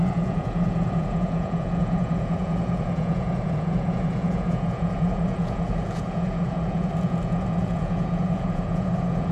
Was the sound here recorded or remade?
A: remade